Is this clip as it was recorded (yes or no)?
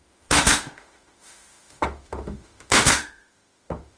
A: no